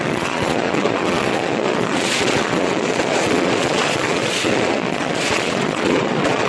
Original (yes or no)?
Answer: no